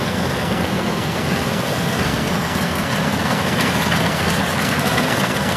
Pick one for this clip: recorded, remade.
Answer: remade